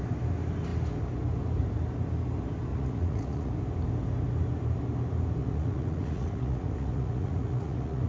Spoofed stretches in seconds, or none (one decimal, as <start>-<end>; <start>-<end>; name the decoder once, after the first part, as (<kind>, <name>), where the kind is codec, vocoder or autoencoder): 2.7-3.5 (vocoder, Vocos); 5.4-8.1